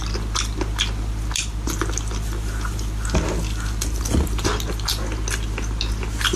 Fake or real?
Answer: real